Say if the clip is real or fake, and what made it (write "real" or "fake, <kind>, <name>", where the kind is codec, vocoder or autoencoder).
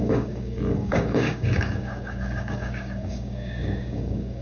fake, codec, DAC